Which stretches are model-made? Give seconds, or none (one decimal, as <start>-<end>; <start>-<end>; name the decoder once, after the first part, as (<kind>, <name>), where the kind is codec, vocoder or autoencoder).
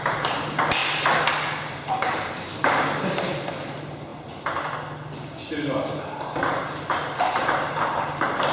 0.0-0.8 (vocoder, BigVGAN v2); 1.8-4.1; 7.3-8.5